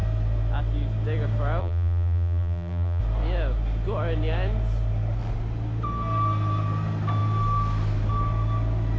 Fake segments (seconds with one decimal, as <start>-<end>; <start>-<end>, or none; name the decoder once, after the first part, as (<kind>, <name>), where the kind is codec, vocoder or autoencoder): 1.6-3.0 (vocoder, BigVGAN v2)